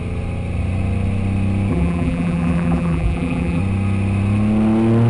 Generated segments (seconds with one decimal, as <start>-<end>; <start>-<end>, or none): 1.7-3.6